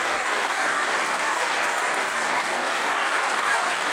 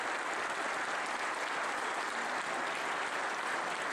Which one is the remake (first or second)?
first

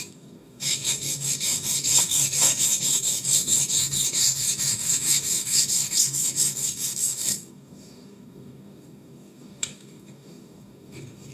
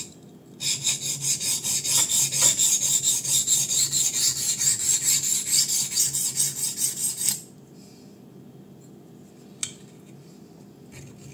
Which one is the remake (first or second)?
first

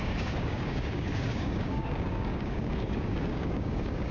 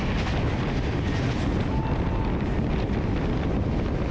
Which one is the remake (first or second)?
first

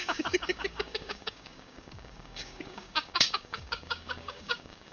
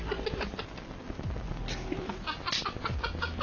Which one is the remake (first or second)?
first